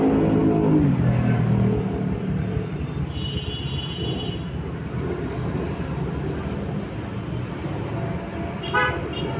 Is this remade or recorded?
recorded